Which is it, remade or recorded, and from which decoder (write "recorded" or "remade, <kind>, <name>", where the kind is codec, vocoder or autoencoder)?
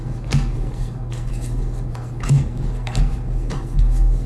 remade, codec, SNAC